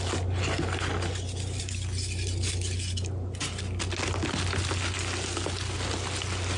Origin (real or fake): real